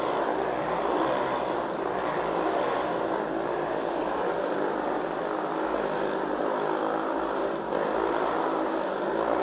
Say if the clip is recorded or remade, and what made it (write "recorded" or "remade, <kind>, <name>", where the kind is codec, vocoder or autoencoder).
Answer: recorded